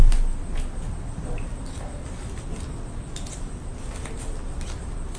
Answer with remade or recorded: recorded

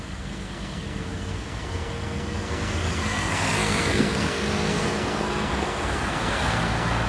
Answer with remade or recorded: remade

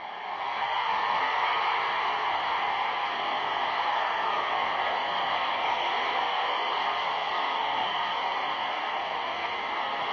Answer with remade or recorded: remade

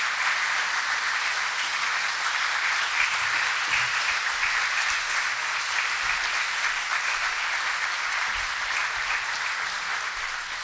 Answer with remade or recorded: recorded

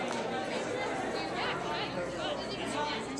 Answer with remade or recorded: recorded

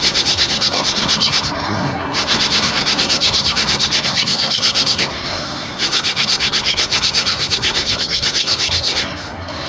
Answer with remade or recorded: remade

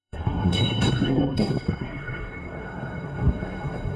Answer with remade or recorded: remade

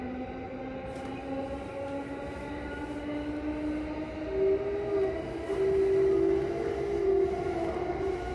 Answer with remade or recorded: recorded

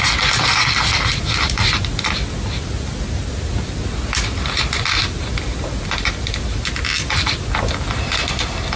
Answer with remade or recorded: recorded